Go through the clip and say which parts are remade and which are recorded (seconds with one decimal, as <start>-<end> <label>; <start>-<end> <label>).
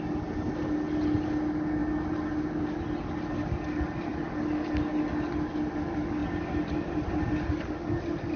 0.0-8.4 recorded